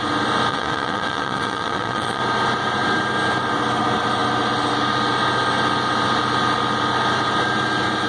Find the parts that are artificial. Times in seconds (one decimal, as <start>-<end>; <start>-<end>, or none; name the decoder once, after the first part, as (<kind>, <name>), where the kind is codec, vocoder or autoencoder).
0.5-2.2 (vocoder, WaveNeXt)